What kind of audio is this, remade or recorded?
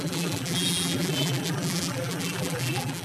remade